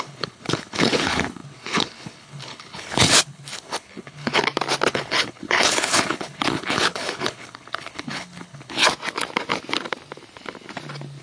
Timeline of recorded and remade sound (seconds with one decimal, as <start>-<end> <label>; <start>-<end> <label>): 0.0-4.4 remade; 4.4-4.9 recorded; 4.9-8.8 remade; 8.8-11.2 recorded